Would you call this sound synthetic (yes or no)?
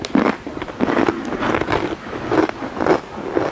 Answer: no